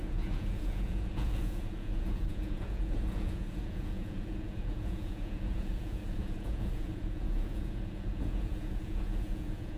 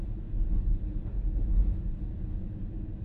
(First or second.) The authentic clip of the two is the second